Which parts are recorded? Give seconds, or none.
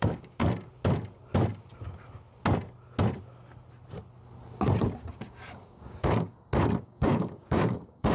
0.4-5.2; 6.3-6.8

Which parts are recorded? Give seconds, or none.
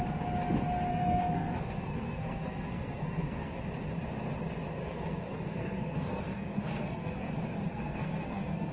0.0-0.9; 3.6-4.8; 7.3-7.7